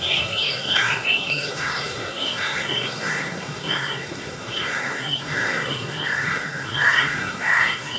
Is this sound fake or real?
fake